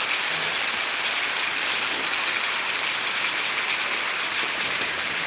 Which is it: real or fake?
real